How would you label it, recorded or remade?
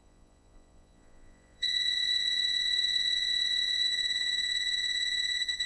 remade